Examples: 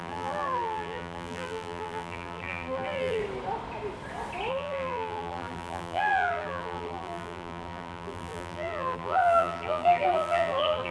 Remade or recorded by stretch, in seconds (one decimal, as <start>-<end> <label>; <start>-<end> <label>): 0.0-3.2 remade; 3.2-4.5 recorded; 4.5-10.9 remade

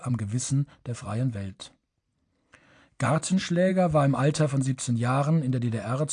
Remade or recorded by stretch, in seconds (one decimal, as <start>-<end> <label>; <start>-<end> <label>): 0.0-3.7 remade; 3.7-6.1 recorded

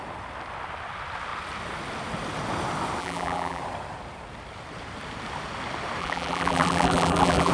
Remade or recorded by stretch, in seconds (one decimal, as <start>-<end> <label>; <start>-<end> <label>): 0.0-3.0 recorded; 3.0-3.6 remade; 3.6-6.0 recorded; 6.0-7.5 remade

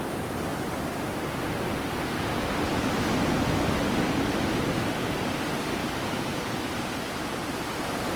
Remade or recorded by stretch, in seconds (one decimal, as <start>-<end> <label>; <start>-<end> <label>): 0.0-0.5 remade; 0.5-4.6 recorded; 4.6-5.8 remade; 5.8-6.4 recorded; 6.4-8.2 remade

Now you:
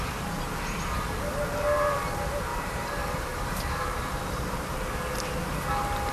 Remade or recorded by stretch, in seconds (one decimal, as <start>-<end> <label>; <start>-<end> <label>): 0.0-2.5 recorded; 2.5-4.1 remade; 4.1-6.1 recorded

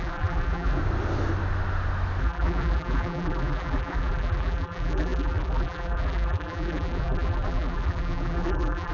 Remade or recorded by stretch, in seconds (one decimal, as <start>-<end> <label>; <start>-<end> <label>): 0.0-0.8 remade; 0.8-2.2 recorded; 2.2-8.9 remade